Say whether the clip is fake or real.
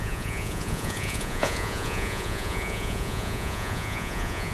fake